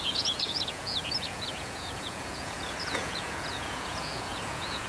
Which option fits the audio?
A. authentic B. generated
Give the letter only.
B